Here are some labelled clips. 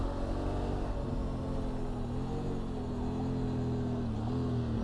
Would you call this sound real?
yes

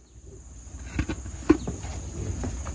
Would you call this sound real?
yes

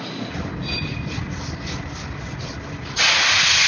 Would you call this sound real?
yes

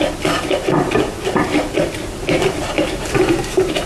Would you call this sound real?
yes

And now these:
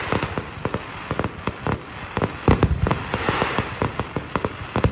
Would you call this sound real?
yes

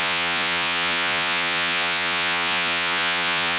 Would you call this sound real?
no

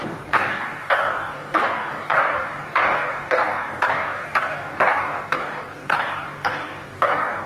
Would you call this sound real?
no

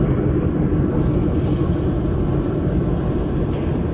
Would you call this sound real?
yes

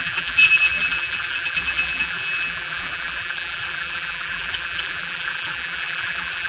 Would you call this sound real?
no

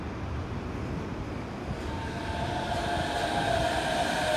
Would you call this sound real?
yes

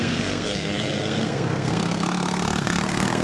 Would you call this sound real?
no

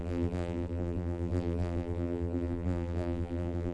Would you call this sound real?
no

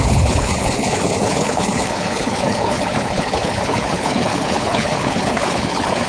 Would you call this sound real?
no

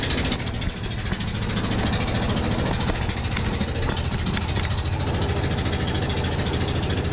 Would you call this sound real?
yes